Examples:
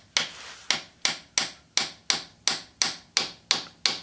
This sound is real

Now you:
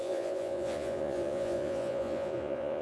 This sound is fake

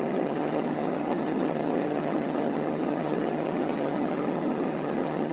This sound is fake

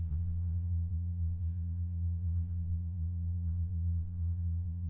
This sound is fake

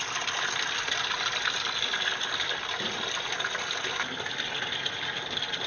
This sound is real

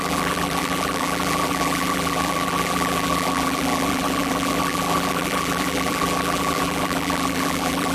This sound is fake